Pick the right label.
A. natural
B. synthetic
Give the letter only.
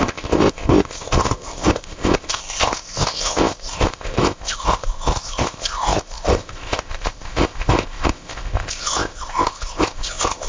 B